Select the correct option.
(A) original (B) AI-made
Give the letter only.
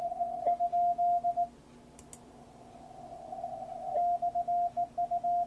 A